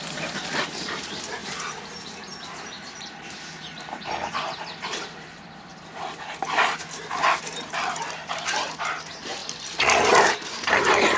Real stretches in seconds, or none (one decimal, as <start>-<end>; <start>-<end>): 5.7-7.4